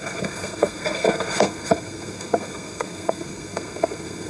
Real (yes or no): no